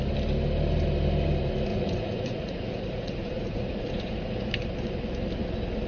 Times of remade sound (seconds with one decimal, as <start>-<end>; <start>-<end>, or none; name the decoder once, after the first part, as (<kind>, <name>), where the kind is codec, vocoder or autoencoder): 1.7-4.5 (vocoder, Vocos)

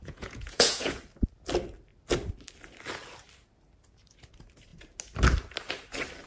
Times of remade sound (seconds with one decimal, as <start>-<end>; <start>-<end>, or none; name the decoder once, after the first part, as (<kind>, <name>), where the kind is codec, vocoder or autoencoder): 0.0-1.0 (vocoder, Vocos)

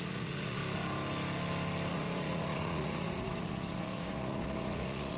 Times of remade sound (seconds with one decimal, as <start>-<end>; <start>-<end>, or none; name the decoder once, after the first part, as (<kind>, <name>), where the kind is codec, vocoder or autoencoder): 0.0-0.6 (vocoder, Vocos); 1.9-5.2

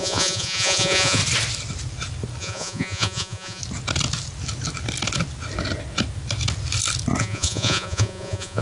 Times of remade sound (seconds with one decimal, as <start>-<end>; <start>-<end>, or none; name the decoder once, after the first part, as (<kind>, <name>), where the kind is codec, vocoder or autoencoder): 0.0-1.2 (vocoder, Vocos); 2.4-3.6; 7.2-8.6